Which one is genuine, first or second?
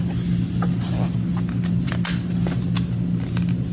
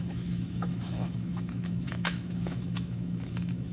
first